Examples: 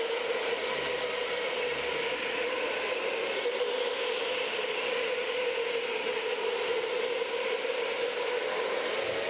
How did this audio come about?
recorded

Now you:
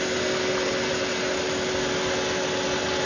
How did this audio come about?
recorded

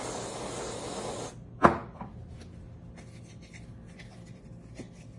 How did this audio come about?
recorded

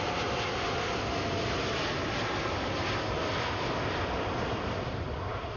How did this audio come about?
recorded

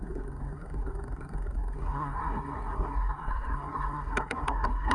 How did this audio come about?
remade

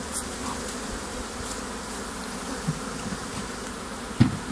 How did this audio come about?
recorded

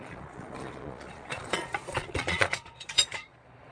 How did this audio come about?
remade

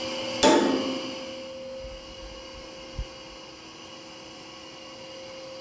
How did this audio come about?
recorded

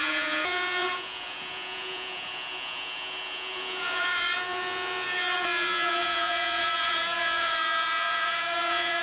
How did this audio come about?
remade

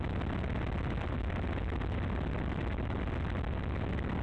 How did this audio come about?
recorded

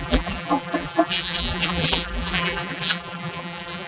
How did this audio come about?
remade